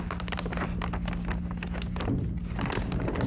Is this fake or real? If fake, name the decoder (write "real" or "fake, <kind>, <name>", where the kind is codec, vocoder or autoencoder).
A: real